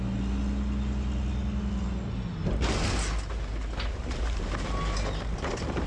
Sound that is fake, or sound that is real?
real